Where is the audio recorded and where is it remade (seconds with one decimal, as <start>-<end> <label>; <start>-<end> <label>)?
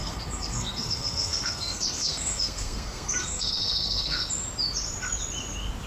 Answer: 0.0-4.2 remade; 4.2-5.9 recorded